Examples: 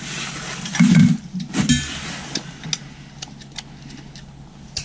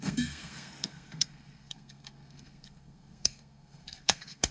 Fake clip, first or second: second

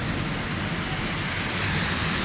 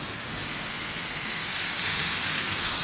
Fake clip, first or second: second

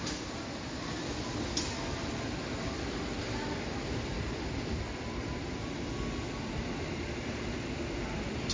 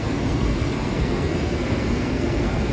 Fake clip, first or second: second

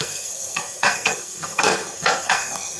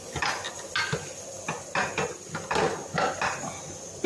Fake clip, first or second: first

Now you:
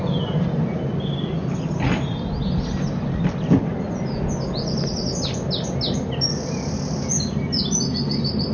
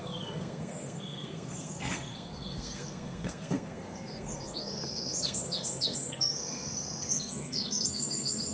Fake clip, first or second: second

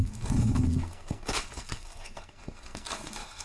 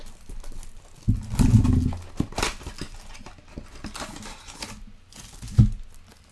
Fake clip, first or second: first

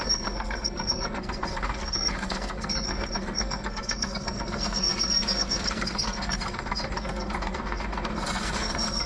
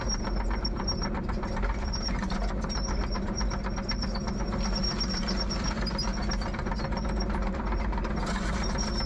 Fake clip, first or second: first